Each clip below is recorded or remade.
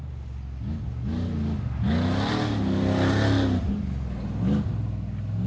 recorded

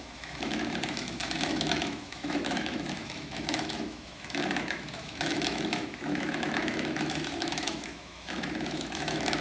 remade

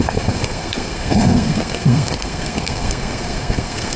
remade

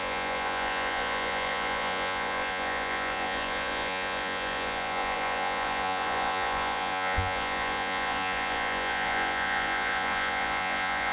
remade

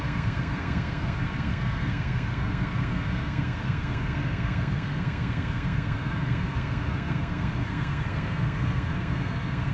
remade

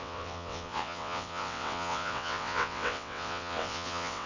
remade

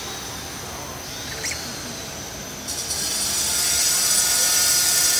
recorded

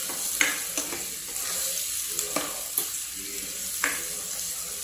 recorded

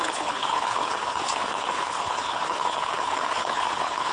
remade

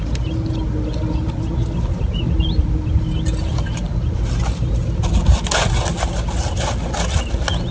recorded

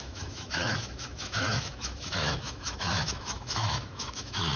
remade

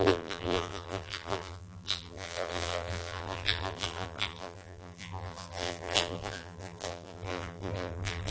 remade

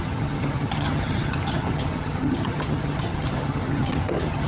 remade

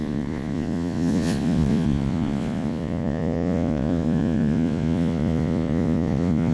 remade